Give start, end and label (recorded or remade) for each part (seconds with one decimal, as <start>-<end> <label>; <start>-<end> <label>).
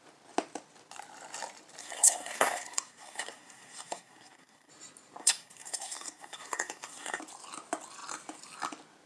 0.0-1.8 recorded; 1.8-4.7 remade; 4.7-5.2 recorded; 5.2-7.2 remade; 7.2-9.1 recorded